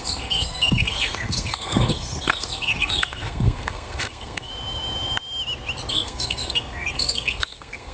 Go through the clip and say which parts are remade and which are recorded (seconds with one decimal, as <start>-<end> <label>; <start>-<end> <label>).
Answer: 0.0-4.5 remade; 4.5-5.9 recorded; 5.9-7.9 remade